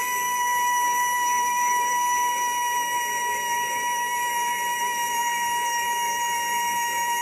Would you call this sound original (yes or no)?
no